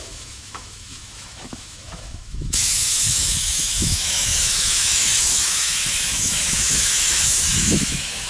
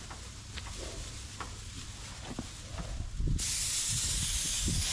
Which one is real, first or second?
second